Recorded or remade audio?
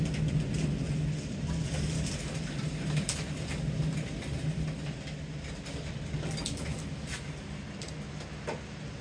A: recorded